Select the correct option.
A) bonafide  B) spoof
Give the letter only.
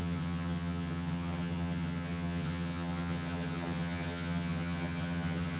B